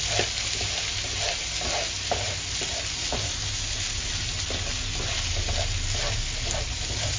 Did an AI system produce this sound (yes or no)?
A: no